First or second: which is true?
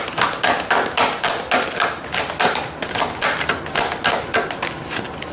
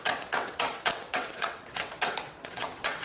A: first